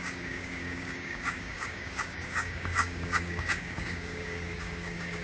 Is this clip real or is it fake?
fake